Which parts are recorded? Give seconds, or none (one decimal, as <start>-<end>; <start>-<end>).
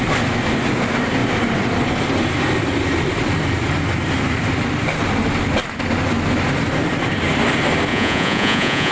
0.0-7.9